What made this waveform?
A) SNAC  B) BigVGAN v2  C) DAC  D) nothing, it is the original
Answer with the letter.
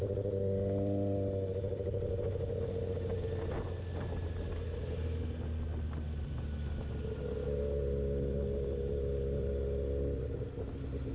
D